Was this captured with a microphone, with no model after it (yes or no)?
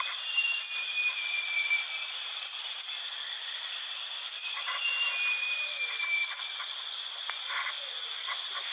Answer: no